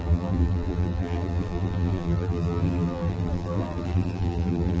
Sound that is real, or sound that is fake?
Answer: fake